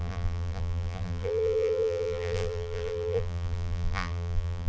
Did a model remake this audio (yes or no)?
yes